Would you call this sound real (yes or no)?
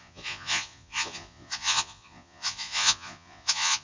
no